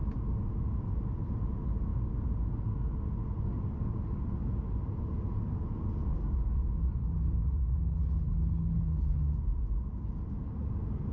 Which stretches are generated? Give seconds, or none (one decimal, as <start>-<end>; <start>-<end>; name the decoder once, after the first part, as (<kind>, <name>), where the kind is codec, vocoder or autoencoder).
7.0-9.2 (codec, HILCodec)